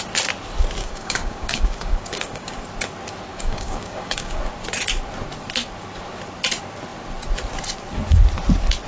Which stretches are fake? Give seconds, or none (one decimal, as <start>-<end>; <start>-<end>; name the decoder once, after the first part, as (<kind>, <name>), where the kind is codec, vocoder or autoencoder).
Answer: 0.8-2.5 (codec, DAC); 3.3-4.4